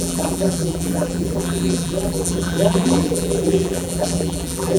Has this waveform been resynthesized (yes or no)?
yes